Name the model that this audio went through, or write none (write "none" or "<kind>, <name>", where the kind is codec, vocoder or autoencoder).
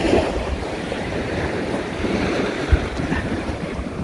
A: vocoder, BigVGAN v2